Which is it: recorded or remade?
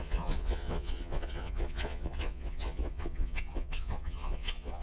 remade